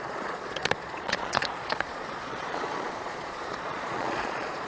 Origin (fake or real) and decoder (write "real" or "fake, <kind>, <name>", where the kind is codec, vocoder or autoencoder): fake, vocoder, Vocos